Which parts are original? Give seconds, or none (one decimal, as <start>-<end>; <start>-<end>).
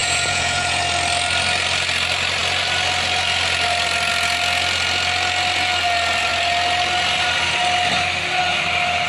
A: 0.8-9.1